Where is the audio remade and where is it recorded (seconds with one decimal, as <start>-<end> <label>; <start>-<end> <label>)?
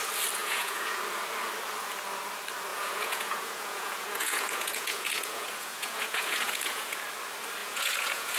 0.0-0.4 recorded; 0.4-1.0 remade; 1.0-2.7 recorded; 2.7-7.0 remade; 7.0-7.6 recorded; 7.6-8.4 remade